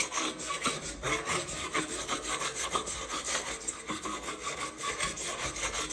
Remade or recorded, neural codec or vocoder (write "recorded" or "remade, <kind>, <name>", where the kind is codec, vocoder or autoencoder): remade, codec, SNAC